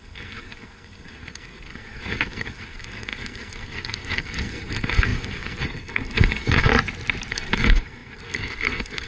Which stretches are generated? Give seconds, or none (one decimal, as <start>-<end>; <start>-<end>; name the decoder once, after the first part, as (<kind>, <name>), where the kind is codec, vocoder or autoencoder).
0.0-6.7 (codec, SNAC); 7.3-9.1